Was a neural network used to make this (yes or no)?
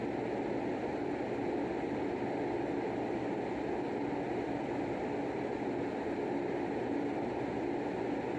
no